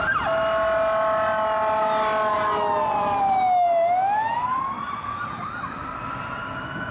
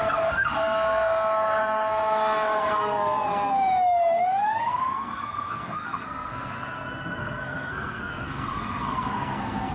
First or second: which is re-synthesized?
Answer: second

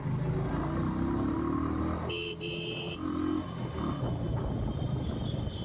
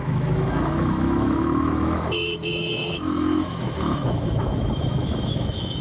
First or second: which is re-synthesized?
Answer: second